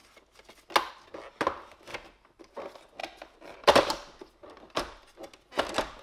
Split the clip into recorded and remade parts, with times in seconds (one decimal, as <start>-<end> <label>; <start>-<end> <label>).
0.0-1.9 recorded; 1.9-2.5 remade; 2.5-3.0 recorded; 3.0-4.2 remade; 4.2-6.0 recorded